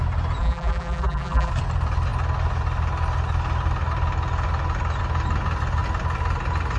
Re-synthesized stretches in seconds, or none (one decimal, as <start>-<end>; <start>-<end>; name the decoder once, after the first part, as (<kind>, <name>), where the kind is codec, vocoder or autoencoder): 0.4-1.5 (vocoder, BigVGAN v2)